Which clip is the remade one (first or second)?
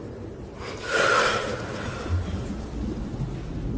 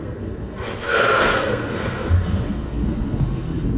second